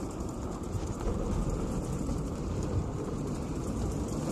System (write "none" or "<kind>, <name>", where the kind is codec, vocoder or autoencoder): vocoder, BigVGAN v2